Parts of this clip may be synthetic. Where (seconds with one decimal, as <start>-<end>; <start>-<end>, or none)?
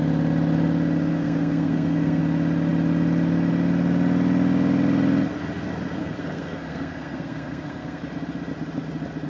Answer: 1.1-2.2; 6.0-8.0